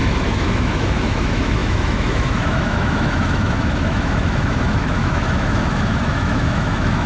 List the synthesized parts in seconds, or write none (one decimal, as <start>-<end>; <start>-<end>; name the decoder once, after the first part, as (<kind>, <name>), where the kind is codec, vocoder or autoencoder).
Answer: 0.0-7.1 (autoencoder, DAC-VAE)